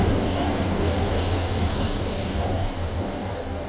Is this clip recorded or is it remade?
remade